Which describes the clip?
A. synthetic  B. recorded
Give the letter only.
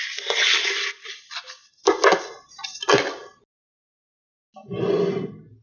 B